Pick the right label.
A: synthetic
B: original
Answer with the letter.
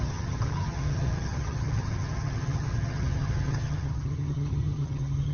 A